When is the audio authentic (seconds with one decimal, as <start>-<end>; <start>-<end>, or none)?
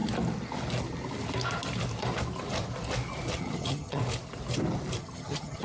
0.0-3.4; 4.0-5.0